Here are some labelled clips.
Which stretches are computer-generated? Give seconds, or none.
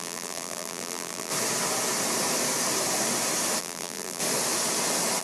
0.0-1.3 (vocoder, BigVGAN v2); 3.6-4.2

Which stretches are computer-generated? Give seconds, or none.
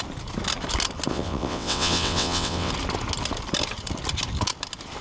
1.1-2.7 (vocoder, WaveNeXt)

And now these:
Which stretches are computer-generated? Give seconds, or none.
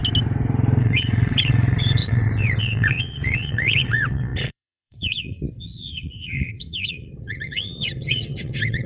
0.8-8.9 (vocoder, WaveNeXt)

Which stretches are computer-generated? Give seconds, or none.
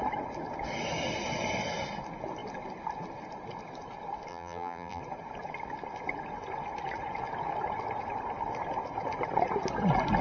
4.3-5.0 (vocoder, BigVGAN v2)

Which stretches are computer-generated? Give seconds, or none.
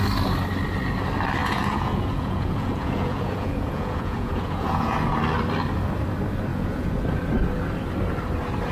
1.4-5.2 (vocoder, Vocos); 6.5-7.0